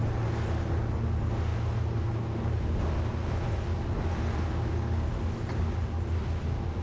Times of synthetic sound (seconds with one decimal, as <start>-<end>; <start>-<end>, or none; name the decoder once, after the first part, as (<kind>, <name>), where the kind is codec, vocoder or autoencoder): none